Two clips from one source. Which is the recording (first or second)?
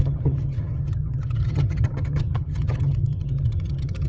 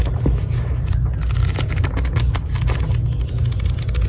second